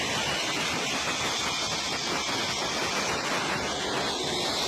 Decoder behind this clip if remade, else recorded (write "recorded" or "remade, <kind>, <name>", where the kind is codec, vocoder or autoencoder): recorded